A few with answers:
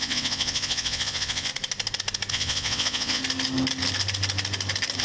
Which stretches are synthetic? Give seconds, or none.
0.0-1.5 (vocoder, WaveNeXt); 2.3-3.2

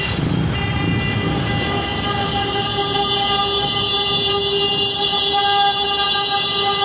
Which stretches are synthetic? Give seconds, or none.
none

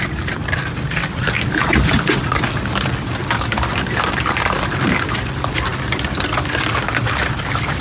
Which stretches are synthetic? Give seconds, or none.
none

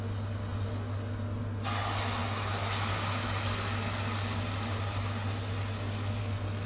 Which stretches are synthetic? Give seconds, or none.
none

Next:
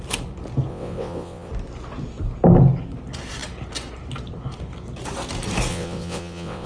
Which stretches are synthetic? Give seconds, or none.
0.7-1.5 (vocoder, WaveNeXt); 5.7-6.7